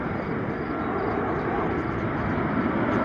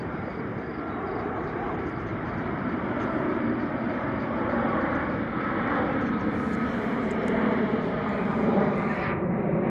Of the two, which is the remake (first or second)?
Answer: second